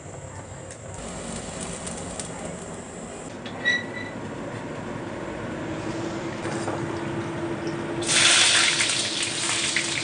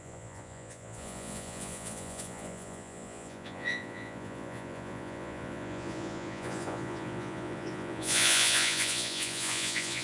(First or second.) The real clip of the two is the first